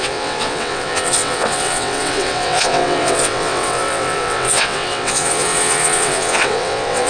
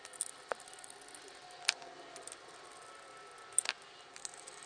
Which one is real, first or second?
second